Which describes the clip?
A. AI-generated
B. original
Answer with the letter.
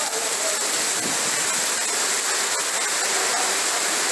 B